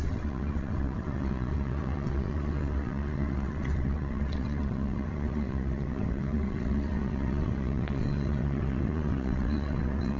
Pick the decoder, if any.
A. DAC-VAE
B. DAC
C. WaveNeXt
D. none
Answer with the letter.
C